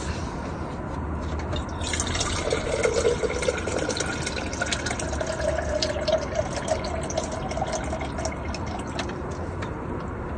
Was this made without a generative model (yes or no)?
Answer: yes